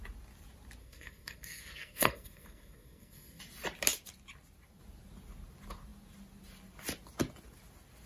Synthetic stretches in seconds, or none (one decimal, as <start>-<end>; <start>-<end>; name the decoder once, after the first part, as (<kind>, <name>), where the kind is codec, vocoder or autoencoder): 0.8-3.4 (codec, SNAC)

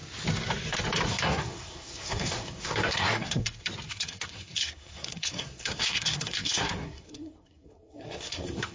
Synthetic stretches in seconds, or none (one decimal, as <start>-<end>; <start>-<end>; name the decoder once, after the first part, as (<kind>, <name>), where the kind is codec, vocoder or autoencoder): 1.1-3.4 (codec, SNAC); 3.9-8.7

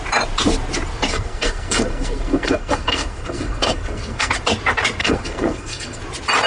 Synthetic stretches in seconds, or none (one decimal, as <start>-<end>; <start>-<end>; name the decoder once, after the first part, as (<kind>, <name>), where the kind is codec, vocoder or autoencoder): 1.1-4.3 (codec, SNAC); 5.0-6.0